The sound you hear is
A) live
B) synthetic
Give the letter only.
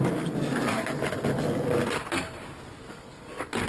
A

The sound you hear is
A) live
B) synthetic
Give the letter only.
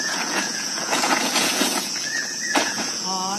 B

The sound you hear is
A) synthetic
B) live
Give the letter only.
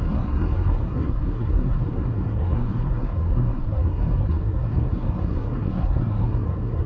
A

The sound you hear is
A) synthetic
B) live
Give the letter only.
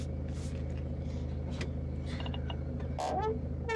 B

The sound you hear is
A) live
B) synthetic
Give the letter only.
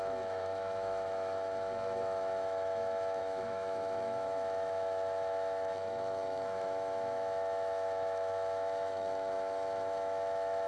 B